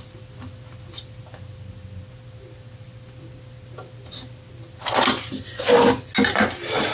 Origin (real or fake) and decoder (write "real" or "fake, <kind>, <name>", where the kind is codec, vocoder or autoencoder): real